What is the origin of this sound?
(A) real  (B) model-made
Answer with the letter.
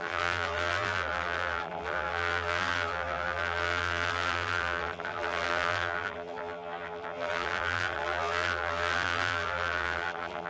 B